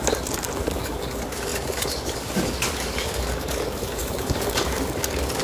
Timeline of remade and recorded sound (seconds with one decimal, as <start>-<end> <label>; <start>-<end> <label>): 0.0-5.4 remade